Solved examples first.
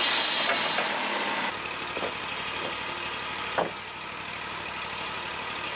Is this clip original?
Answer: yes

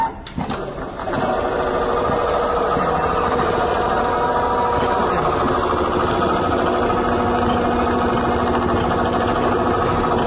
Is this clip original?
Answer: yes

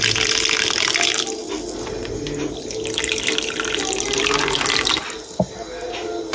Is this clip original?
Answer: yes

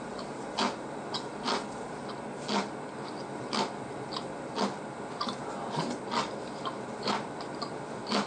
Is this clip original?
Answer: yes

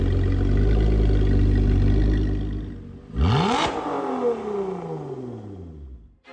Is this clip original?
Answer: yes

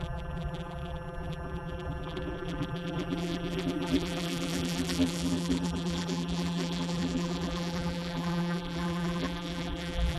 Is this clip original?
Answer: no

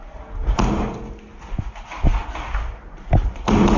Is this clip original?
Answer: yes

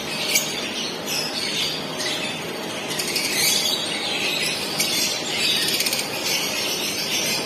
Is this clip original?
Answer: no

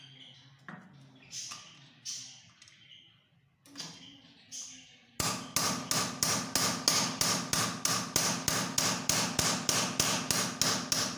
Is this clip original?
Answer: yes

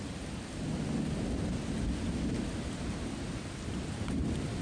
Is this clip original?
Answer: yes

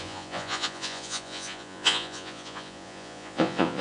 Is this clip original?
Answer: no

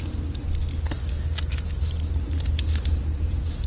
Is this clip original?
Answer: yes